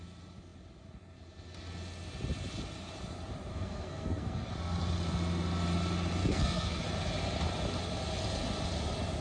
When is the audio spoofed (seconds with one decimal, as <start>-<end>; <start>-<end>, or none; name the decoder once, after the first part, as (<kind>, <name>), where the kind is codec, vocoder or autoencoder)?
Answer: 3.5-4.5 (codec, SNAC); 6.2-6.8